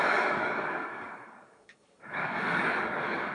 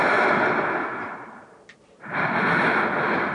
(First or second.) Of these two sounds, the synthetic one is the first